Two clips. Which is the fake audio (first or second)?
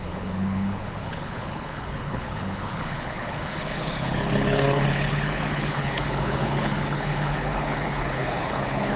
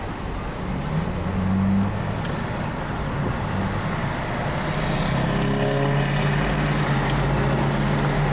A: first